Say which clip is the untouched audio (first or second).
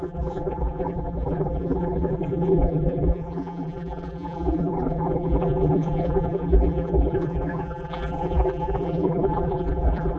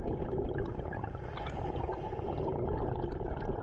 second